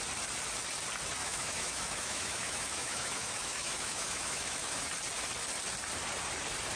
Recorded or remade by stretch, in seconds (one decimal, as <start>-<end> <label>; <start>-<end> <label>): 0.0-1.2 recorded; 1.2-4.9 remade; 4.9-6.8 recorded